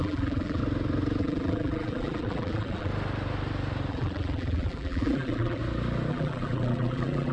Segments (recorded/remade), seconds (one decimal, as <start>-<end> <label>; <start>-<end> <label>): 0.0-0.6 remade; 0.6-1.2 recorded; 1.2-2.9 remade; 2.9-3.9 recorded; 3.9-5.6 remade; 5.6-6.1 recorded; 6.1-7.3 remade